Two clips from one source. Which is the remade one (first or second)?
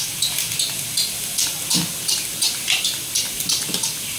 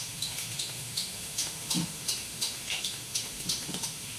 second